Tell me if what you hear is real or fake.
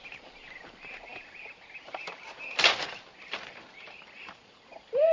fake